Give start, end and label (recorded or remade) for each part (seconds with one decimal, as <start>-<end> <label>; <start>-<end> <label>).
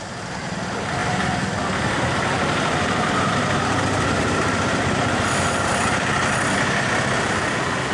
0.0-7.9 recorded